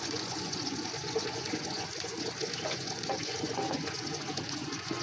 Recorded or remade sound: remade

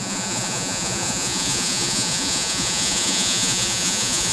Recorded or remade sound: remade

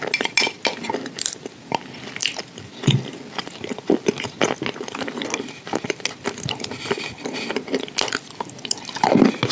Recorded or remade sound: recorded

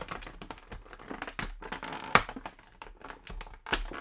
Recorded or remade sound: recorded